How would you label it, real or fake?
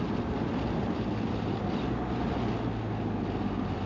real